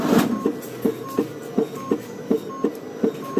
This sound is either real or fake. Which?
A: real